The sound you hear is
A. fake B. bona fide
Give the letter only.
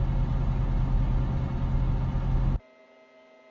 B